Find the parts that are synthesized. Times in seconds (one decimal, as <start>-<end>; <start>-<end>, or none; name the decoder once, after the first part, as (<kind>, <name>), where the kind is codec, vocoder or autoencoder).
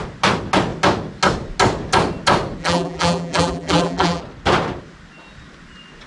2.6-4.2 (vocoder, BigVGAN v2)